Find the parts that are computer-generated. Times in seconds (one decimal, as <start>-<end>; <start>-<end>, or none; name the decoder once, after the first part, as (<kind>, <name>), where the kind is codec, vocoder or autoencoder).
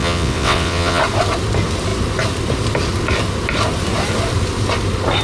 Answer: 0.0-1.0 (vocoder, WaveNeXt)